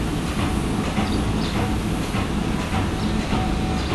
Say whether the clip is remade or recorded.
recorded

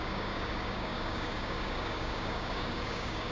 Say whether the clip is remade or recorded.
remade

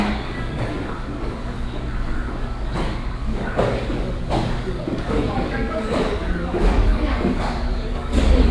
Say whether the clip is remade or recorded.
remade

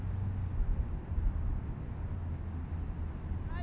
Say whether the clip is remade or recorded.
recorded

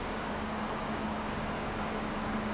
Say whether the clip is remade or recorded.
remade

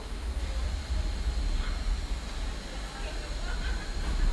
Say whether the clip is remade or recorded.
recorded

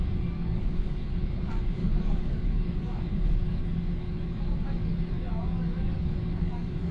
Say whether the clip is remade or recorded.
remade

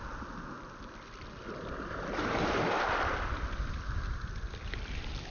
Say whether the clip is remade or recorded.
recorded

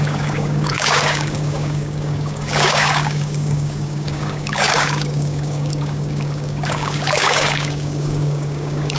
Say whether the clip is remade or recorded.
remade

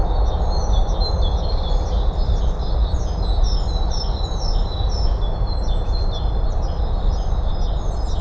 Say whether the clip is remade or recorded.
recorded